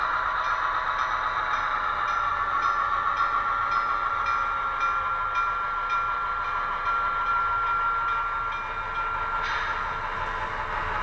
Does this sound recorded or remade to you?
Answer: recorded